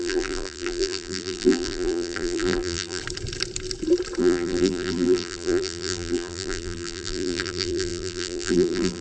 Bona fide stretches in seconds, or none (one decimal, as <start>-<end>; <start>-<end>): 3.0-4.2